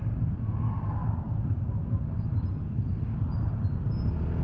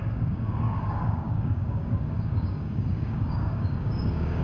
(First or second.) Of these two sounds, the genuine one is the first